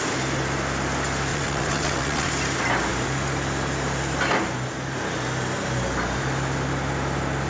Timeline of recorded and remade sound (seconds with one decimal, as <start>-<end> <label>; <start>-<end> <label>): 0.0-1.3 recorded; 1.3-2.3 remade; 2.3-7.5 recorded